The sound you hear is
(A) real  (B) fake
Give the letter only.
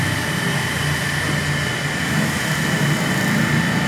B